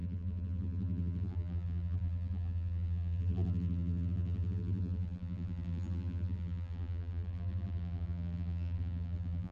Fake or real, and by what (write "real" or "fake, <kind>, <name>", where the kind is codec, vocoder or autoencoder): fake, vocoder, BigVGAN v2